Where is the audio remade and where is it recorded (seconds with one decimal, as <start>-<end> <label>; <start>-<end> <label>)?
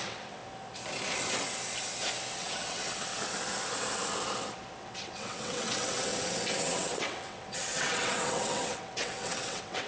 0.0-0.4 remade; 0.4-2.4 recorded; 2.4-3.1 remade; 3.1-4.8 recorded; 4.8-6.1 remade; 6.1-6.6 recorded; 6.6-9.9 remade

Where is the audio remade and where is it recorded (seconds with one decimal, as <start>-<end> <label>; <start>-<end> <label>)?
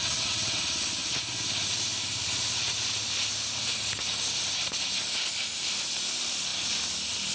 0.0-0.6 remade; 0.6-7.3 recorded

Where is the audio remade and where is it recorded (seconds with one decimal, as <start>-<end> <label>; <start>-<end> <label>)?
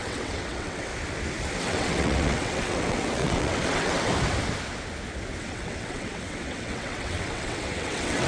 0.0-0.9 remade; 0.9-1.6 recorded; 1.6-4.1 remade; 4.1-5.4 recorded; 5.4-8.3 remade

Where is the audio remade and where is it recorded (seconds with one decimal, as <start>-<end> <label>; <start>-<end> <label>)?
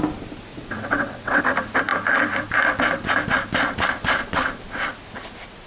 0.0-0.5 recorded; 0.5-1.4 remade; 1.4-5.7 recorded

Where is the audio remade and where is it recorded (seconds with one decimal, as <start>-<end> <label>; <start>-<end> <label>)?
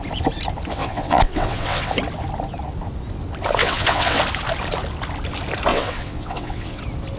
0.0-0.7 recorded; 0.7-1.9 remade; 1.9-3.6 recorded; 3.6-4.2 remade; 4.2-5.7 recorded; 5.7-6.8 remade; 6.8-7.2 recorded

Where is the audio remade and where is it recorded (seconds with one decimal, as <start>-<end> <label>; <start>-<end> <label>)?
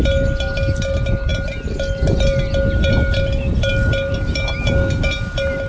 0.0-5.7 recorded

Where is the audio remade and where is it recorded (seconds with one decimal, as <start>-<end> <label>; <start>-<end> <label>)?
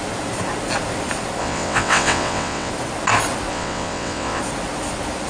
0.0-1.4 recorded; 1.4-2.7 remade; 2.7-3.5 recorded; 3.5-4.4 remade; 4.4-5.3 recorded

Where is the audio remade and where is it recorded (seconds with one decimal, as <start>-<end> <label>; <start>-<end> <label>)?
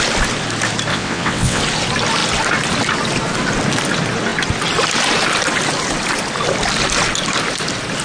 0.0-0.9 recorded; 0.9-1.6 remade; 1.6-8.0 recorded